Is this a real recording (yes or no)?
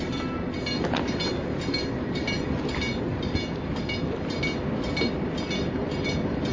yes